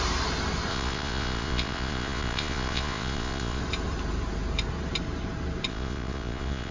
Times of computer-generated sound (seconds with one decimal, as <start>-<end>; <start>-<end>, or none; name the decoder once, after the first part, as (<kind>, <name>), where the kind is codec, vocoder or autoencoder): 0.7-3.6 (vocoder, Vocos); 5.7-6.7

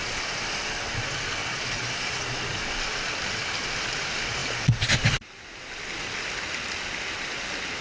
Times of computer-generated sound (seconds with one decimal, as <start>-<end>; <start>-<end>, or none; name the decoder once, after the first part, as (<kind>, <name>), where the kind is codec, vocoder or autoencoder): 1.4-2.6 (vocoder, Vocos)

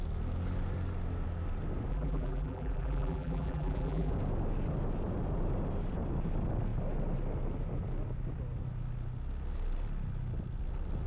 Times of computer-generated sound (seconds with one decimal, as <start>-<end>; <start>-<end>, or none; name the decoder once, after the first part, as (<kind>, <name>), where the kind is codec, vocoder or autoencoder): 1.9-4.1 (vocoder, BigVGAN v2)